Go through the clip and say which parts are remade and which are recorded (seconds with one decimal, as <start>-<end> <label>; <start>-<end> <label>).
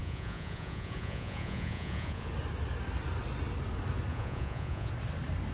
0.0-2.3 remade; 2.3-4.1 recorded; 4.1-4.9 remade; 4.9-5.5 recorded